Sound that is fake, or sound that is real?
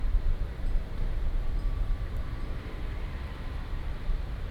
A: fake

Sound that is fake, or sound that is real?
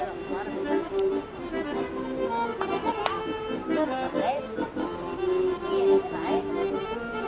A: fake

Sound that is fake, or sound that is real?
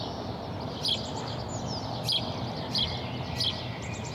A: real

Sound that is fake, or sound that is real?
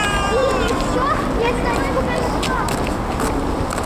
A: real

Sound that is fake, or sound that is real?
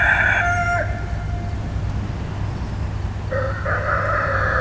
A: real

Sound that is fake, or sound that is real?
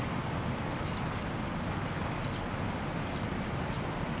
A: real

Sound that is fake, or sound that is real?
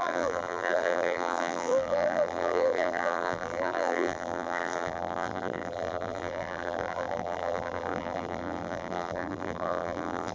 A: fake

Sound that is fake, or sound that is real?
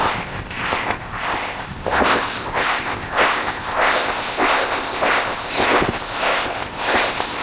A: fake